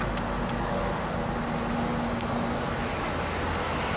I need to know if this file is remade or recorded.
recorded